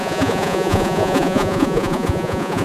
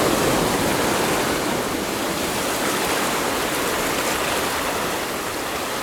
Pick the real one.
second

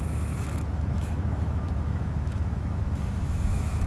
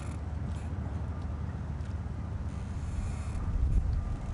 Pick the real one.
second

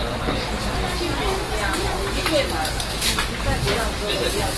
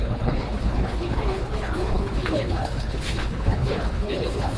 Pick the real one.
first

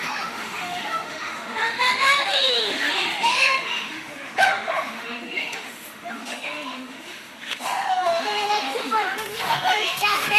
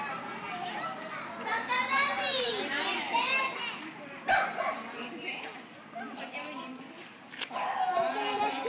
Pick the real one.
second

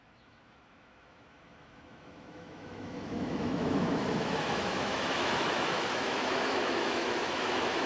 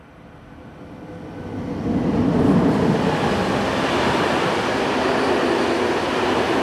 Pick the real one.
second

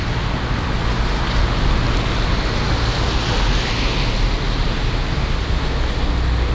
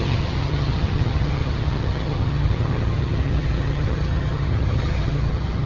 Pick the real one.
first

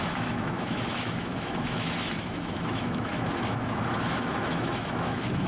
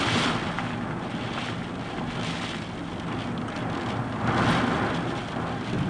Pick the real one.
second